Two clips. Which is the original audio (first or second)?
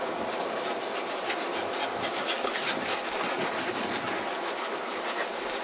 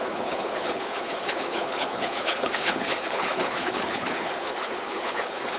first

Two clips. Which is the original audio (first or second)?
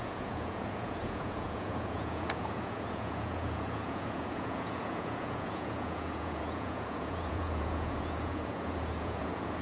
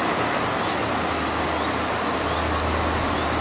second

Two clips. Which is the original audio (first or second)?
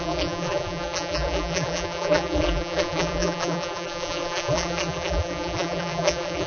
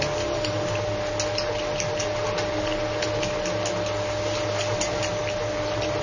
second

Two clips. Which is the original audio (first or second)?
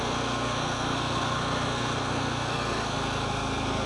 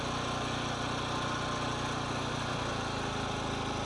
second